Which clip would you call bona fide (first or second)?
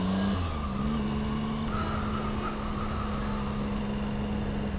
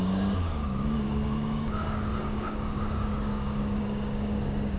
first